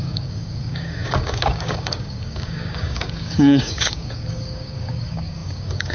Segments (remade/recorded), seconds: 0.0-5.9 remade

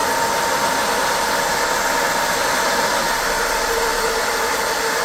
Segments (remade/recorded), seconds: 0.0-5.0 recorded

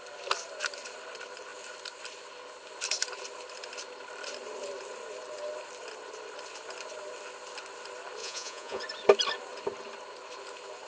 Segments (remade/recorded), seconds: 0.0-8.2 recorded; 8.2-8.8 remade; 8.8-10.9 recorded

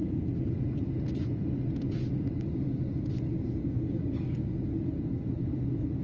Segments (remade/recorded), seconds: 0.0-3.6 recorded; 3.6-4.5 remade; 4.5-6.0 recorded

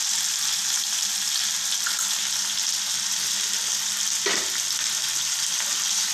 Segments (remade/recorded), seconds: 0.0-6.1 recorded